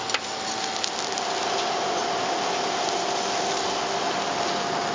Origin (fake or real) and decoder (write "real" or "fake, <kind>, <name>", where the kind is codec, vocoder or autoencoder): real